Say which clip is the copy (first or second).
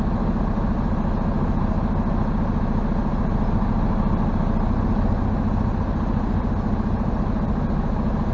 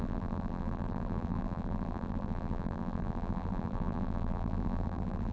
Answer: second